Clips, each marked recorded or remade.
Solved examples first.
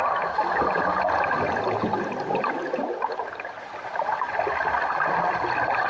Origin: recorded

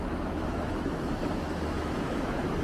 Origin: remade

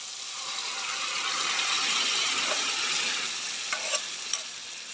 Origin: recorded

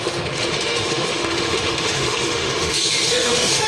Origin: remade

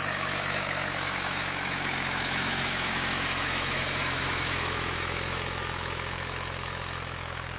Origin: remade